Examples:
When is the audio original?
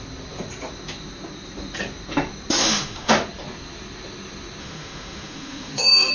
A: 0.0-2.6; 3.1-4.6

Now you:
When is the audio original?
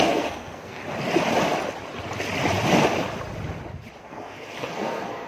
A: 0.8-4.0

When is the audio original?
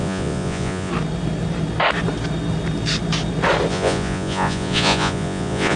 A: 0.9-3.7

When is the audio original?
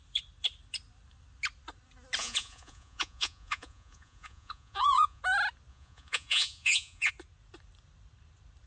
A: 0.0-2.2; 5.2-5.7; 7.1-8.7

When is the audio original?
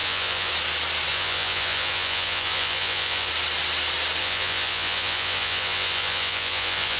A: 0.5-1.1; 3.3-4.2